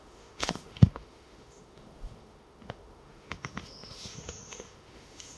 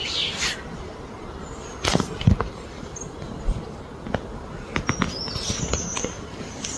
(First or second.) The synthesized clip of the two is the first